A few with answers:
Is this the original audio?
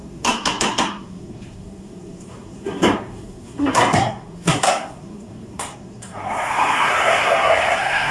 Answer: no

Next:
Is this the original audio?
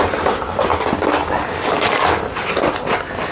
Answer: yes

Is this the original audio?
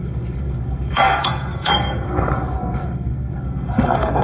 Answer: no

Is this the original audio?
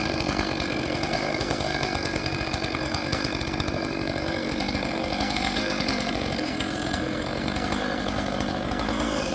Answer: no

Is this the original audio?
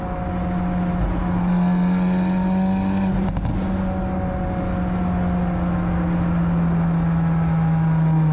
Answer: yes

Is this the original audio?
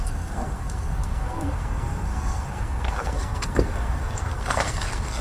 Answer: no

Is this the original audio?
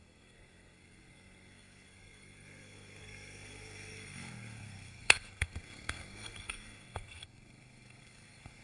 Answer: no